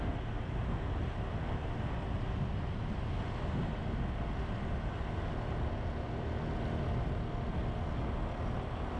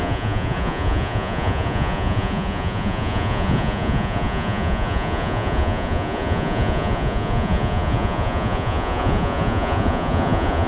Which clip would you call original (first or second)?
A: first